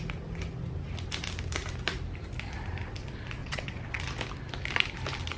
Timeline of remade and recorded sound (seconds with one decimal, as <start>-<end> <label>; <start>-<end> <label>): 0.0-3.4 recorded; 3.4-4.0 remade; 4.0-5.4 recorded